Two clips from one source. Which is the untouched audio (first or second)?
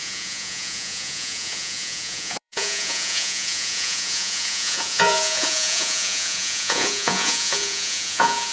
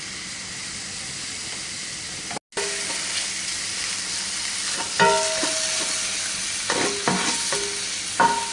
second